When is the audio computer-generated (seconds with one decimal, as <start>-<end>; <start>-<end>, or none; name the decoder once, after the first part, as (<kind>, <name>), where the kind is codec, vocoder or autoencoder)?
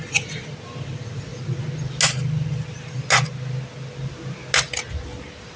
none